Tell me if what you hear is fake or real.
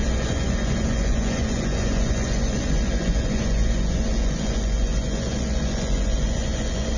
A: fake